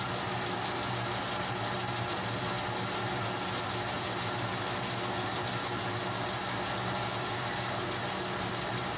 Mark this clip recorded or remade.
recorded